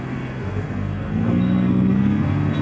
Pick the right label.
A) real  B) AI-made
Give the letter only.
B